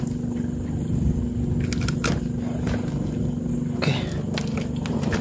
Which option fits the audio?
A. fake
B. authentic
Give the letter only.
B